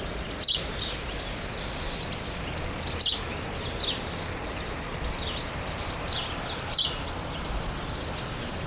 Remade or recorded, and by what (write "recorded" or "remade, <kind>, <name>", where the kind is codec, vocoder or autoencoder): recorded